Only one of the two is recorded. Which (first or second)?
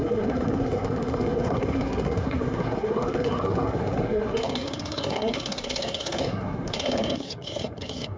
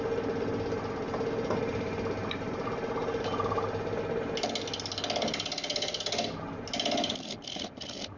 second